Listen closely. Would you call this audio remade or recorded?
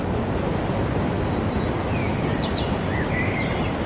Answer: recorded